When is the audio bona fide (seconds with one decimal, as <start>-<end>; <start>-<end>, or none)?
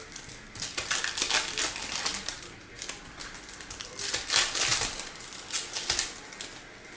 0.0-7.0